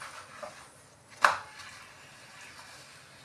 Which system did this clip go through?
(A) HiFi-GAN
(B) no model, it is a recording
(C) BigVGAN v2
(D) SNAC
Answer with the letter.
B